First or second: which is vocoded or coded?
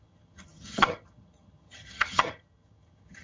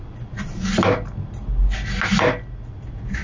first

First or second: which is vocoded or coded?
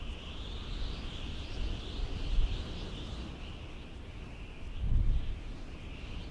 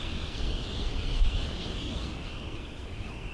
second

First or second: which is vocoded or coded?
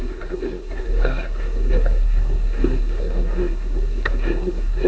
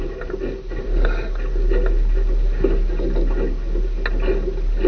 first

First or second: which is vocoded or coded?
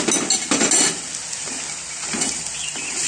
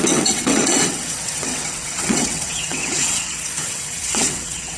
second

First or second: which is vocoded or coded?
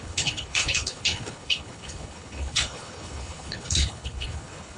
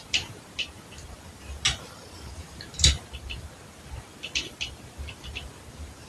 first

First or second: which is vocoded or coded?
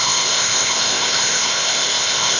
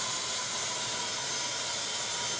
first